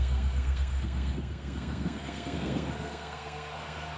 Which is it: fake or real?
fake